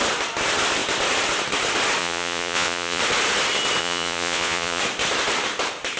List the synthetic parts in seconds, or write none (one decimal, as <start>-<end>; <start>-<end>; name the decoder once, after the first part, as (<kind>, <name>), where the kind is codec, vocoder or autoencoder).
2.0-3.0 (vocoder, Vocos); 3.8-4.8